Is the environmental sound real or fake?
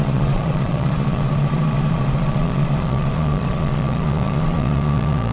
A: fake